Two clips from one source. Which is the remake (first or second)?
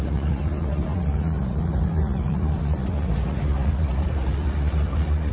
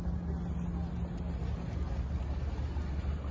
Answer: first